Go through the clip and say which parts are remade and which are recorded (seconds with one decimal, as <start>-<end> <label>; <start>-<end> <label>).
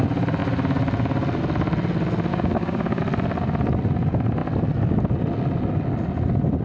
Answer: 0.0-2.3 recorded; 2.3-3.0 remade; 3.0-6.6 recorded